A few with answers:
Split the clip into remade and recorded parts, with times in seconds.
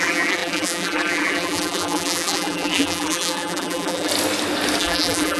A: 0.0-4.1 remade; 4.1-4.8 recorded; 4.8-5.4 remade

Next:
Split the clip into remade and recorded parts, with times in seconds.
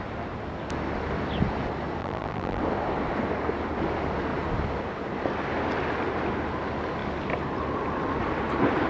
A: 0.0-2.0 recorded; 2.0-2.6 remade; 2.6-8.9 recorded